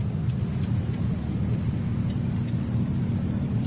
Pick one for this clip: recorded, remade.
recorded